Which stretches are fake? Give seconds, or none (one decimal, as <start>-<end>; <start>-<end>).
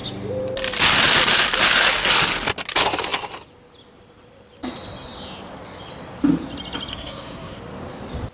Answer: 6.9-7.6